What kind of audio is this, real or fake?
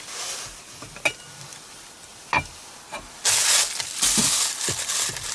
real